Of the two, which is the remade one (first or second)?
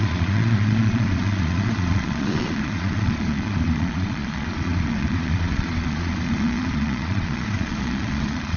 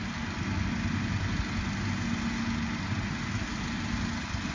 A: first